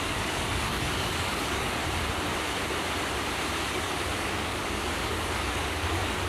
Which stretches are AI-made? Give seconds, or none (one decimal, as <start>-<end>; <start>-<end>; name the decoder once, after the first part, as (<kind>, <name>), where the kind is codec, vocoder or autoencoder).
0.0-1.8 (codec, DAC); 3.7-6.3